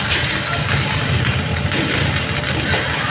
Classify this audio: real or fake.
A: real